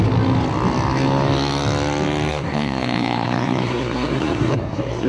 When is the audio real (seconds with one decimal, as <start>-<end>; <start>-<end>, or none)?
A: 0.0-2.3